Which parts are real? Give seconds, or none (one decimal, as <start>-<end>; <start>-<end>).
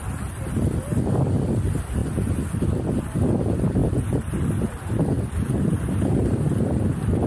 2.0-3.0; 3.8-6.1